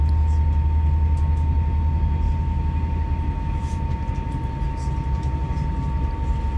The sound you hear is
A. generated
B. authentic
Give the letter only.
B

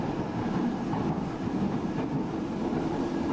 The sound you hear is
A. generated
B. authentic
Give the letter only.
B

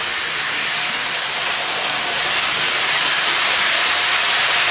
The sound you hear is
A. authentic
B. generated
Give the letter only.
A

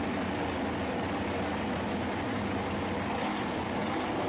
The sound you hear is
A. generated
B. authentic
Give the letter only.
B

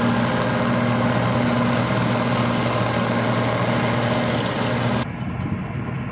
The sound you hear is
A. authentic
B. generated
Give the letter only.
A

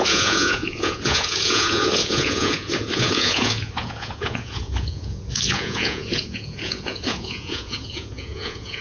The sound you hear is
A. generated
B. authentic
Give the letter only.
A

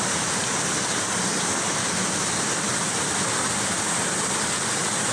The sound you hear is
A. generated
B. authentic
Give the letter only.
B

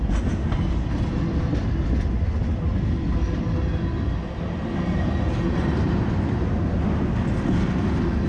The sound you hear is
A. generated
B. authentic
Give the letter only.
B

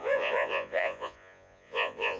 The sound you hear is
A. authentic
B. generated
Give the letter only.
B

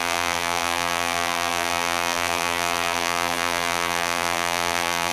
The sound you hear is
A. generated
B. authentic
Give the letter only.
A